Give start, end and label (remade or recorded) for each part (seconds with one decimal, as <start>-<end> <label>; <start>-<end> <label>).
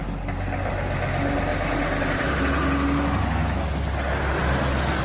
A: 0.0-5.0 recorded